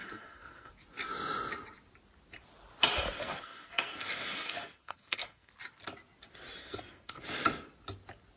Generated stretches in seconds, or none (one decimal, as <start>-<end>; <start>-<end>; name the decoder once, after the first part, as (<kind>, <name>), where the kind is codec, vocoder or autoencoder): 0.0-0.7 (codec, SNAC); 3.2-5.5; 6.6-7.2